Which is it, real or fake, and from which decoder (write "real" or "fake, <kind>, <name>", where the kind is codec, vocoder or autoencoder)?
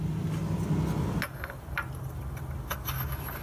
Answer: real